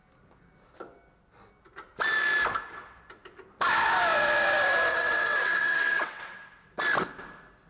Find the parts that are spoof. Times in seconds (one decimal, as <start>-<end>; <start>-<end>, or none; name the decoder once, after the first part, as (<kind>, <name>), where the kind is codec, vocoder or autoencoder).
4.9-6.8 (vocoder, WaveNeXt)

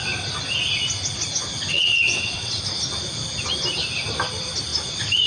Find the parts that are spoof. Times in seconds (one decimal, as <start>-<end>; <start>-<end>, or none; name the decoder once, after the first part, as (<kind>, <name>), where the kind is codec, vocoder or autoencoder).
1.7-2.6 (vocoder, WaveNeXt)